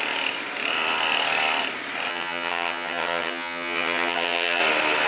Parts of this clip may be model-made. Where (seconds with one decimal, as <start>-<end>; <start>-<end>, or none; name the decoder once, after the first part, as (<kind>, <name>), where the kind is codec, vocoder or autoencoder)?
2.1-4.6 (vocoder, HiFi-GAN)